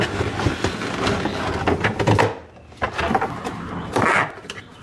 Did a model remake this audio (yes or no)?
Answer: no